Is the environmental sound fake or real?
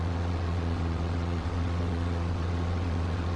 fake